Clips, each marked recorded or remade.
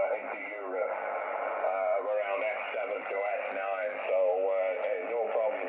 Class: recorded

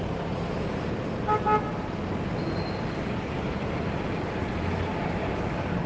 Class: recorded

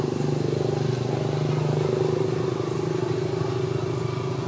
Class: recorded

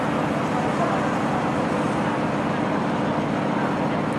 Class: recorded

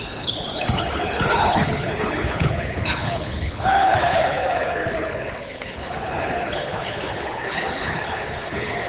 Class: remade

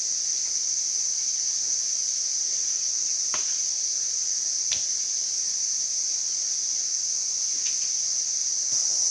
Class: recorded